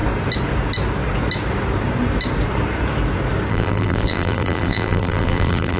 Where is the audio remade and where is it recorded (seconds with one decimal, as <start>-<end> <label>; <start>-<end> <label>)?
0.0-3.5 recorded; 3.5-5.8 remade